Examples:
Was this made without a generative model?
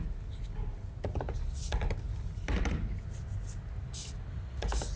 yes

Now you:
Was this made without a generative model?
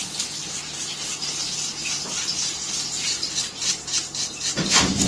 yes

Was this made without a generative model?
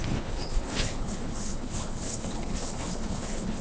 no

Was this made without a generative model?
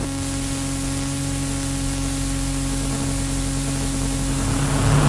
yes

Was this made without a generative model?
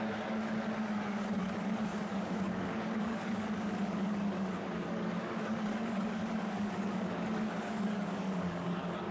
no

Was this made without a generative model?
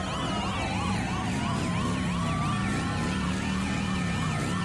yes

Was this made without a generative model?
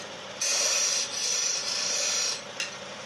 no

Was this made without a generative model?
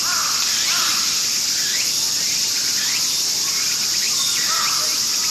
yes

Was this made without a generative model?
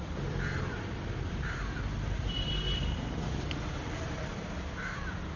no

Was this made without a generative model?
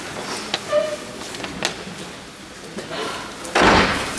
yes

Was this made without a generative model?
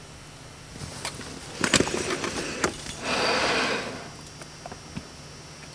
yes